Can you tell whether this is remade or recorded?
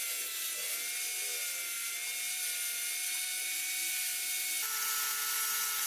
recorded